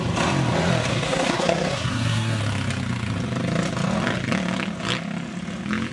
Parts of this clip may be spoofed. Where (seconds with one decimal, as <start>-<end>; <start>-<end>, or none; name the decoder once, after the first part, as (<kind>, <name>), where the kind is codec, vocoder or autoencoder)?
0.9-2.4 (codec, SNAC)